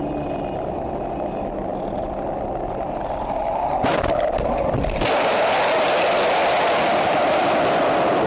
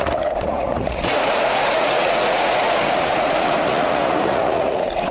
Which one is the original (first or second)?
first